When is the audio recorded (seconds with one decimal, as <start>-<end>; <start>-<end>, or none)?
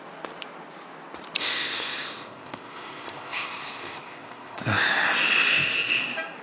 0.0-1.4; 4.9-5.5; 6.0-6.4